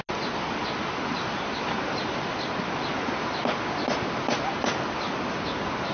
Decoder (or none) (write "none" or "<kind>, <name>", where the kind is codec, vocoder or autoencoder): none